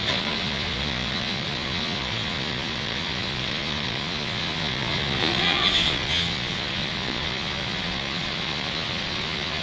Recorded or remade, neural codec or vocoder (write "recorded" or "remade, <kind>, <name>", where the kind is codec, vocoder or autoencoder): remade, vocoder, Vocos